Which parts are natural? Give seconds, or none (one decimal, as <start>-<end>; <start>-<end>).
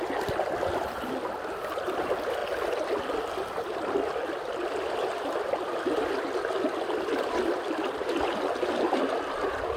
0.0-9.8